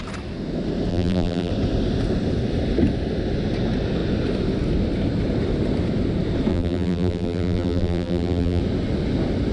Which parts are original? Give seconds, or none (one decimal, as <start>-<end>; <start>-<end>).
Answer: 0.0-0.9; 1.5-6.5; 8.6-9.5